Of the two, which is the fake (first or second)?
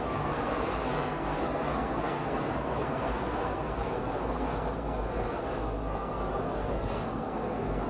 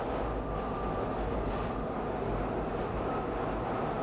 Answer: first